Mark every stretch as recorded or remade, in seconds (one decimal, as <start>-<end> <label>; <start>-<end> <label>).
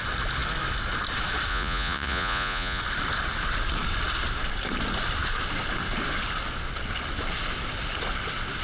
0.0-1.5 recorded; 1.5-2.8 remade; 2.8-8.6 recorded